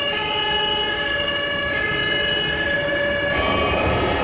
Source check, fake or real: real